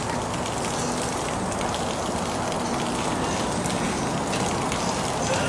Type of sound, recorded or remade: recorded